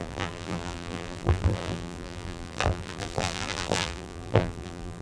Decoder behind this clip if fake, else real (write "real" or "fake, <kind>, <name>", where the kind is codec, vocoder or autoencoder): fake, vocoder, BigVGAN v2